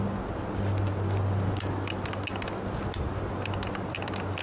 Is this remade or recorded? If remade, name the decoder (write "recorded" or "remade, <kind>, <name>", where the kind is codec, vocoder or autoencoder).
recorded